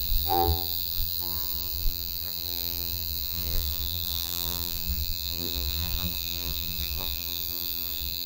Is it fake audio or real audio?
fake